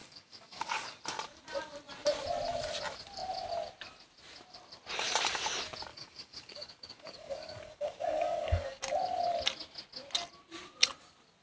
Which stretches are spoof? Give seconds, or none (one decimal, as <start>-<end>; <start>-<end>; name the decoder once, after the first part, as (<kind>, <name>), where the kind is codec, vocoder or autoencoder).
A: 0.0-1.0 (codec, DAC); 5.9-8.8